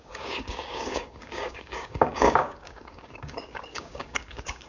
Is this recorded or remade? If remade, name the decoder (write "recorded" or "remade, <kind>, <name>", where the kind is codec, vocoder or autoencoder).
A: remade, codec, DAC